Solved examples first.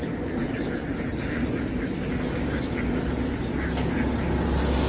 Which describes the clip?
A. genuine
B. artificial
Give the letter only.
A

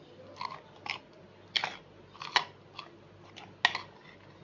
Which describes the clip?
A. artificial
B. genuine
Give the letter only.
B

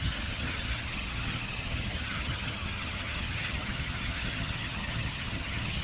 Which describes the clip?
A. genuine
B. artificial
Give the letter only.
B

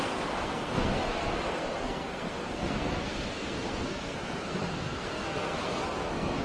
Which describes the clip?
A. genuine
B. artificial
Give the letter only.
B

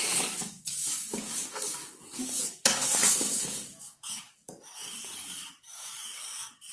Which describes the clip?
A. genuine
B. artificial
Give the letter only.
B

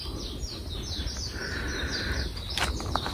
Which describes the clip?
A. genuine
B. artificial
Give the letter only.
A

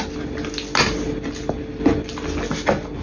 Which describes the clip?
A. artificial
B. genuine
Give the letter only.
B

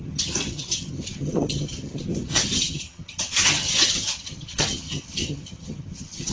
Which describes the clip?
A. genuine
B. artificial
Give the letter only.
B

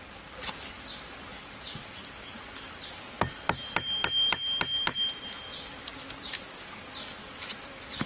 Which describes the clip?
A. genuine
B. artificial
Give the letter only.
A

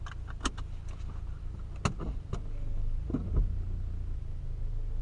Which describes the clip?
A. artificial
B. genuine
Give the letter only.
B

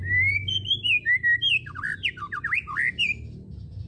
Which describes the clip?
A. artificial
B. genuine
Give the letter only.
B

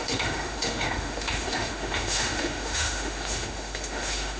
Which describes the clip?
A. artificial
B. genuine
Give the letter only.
A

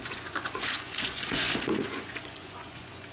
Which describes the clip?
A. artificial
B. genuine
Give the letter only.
A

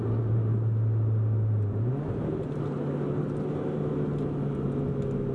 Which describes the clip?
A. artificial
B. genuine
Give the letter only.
B